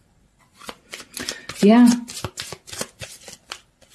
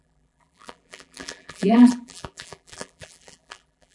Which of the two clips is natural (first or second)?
first